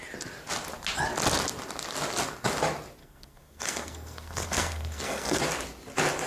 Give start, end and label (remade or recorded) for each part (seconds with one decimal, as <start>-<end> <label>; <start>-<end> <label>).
0.0-3.0 recorded; 3.0-5.4 remade; 5.4-6.3 recorded